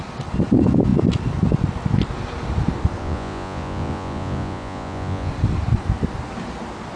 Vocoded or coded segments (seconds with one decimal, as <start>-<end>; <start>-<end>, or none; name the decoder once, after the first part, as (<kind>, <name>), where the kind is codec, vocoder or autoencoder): 3.0-5.3 (vocoder, Vocos)